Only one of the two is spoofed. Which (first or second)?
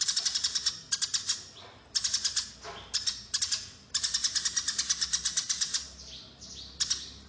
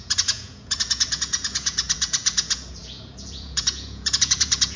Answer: second